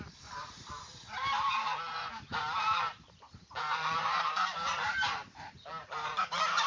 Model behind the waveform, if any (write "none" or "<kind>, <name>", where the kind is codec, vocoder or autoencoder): vocoder, BigVGAN v2